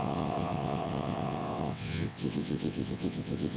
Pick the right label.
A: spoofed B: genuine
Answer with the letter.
A